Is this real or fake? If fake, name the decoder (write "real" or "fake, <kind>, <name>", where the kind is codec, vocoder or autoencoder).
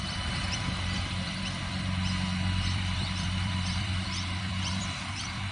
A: fake, vocoder, BigVGAN v2